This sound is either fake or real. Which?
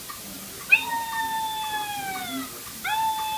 real